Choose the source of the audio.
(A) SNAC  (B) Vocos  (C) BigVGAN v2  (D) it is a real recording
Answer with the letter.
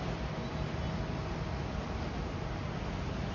D